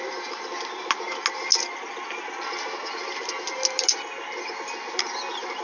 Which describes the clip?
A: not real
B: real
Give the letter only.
B